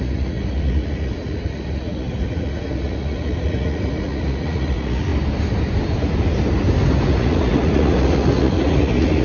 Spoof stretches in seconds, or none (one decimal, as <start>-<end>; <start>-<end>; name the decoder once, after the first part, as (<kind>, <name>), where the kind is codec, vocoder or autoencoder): 0.0-5.1 (vocoder, Vocos); 7.1-9.2